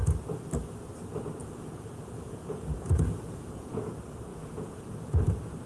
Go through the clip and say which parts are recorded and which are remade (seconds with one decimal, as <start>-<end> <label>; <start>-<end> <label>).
0.0-1.4 recorded; 1.4-3.9 remade; 3.9-4.3 recorded; 4.3-5.3 remade; 5.3-5.7 recorded